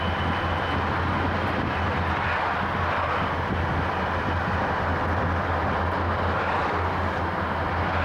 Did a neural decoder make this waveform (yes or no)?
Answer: no